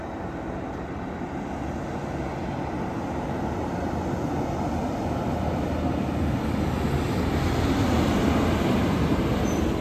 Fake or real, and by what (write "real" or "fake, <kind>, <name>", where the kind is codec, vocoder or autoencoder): real